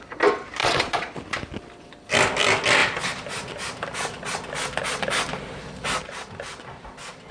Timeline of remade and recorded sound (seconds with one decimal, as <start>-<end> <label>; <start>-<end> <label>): 0.0-0.6 recorded; 0.6-1.2 remade; 1.2-7.3 recorded